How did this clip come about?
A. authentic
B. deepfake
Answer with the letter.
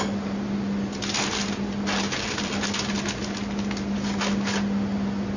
A